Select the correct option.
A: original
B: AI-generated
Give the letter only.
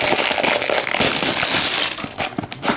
A